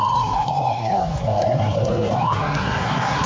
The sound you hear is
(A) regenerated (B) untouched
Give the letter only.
A